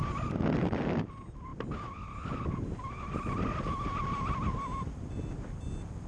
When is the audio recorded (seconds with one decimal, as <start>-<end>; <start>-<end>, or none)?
0.0-6.1